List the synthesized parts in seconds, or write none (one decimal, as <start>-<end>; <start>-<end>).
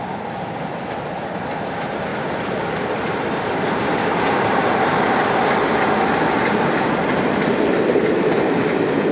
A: none